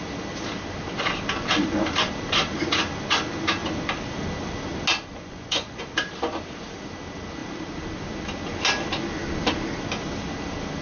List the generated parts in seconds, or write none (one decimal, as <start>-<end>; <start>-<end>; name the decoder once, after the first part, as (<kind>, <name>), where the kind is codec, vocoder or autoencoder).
5.1-5.8 (vocoder, Vocos)